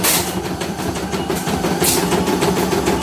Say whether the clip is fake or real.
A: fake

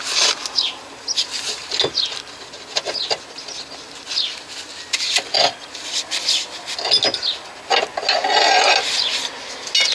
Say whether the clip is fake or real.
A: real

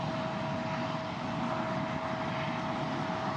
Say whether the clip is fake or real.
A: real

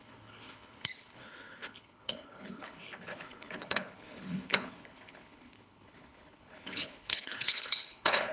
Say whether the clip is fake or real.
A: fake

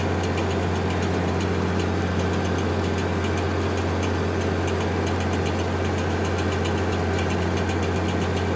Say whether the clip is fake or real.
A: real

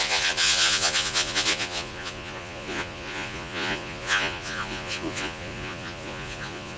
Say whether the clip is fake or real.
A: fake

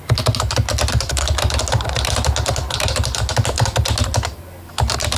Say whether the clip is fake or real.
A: real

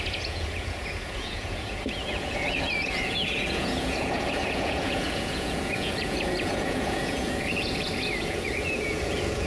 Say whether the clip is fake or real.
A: fake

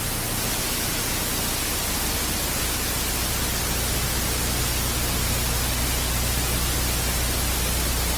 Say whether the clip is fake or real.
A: real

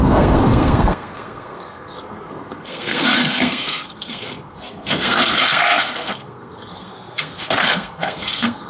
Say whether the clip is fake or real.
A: fake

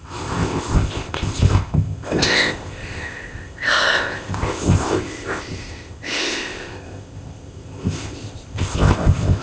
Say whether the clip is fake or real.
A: fake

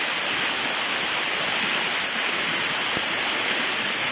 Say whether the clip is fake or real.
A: real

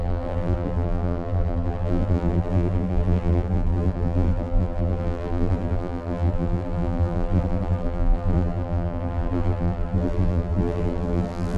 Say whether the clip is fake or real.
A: fake